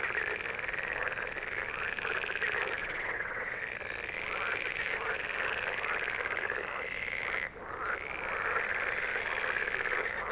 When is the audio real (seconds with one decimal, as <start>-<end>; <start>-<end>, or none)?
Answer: 0.0-2.8; 3.6-10.3